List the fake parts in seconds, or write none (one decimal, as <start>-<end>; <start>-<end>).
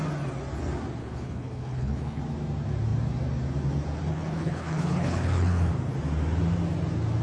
1.0-2.2; 4.1-5.7